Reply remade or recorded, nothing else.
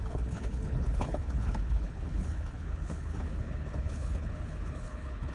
remade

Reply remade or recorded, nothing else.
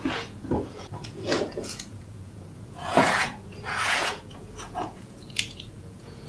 remade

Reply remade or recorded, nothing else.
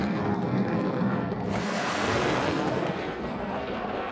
remade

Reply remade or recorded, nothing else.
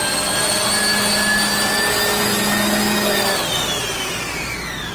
recorded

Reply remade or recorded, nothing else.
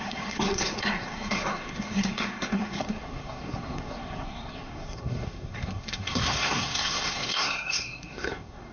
remade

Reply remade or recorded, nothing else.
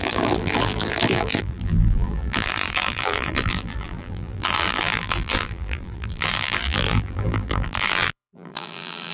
remade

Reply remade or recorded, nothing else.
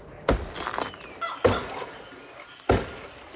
recorded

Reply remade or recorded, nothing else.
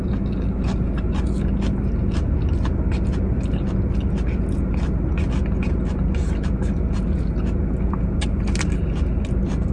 recorded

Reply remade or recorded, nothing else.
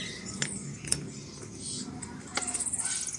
recorded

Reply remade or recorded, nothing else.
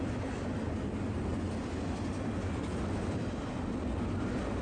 recorded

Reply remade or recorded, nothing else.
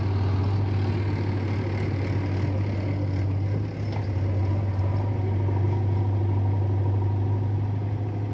recorded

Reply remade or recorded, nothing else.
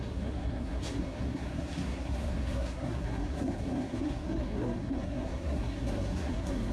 remade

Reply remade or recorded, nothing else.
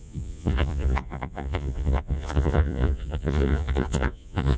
remade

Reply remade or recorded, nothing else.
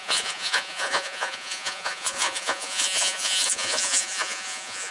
remade